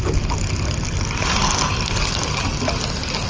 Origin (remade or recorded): recorded